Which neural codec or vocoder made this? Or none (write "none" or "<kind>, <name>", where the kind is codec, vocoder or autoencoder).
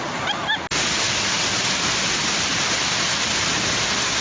none